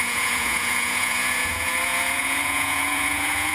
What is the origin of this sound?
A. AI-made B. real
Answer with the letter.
A